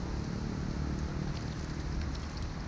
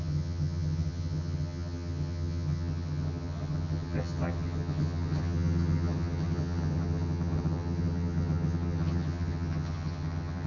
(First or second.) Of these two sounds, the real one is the first